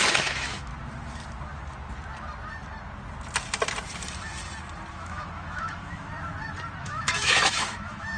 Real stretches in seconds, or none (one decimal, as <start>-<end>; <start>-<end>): 0.7-4.9; 6.1-6.8